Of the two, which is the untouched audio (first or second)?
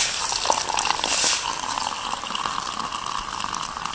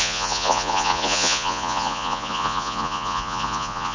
first